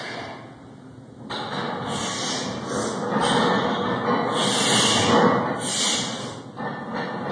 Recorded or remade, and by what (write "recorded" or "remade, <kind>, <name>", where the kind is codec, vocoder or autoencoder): recorded